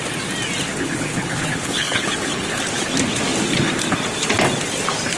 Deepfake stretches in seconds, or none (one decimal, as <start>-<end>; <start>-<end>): 0.7-2.6